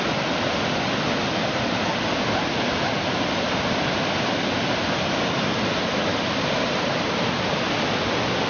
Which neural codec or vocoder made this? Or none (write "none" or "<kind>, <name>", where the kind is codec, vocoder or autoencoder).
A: none